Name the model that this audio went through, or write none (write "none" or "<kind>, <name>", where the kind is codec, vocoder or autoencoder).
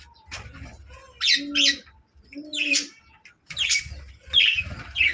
none